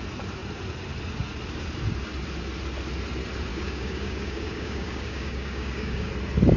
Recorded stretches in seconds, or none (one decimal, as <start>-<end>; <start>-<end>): 0.0-3.5; 6.1-6.6